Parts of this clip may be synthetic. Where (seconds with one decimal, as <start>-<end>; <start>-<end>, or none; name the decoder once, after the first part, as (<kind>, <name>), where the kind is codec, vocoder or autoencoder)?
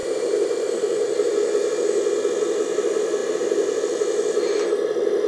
0.0-0.7 (vocoder, BigVGAN v2); 3.2-3.7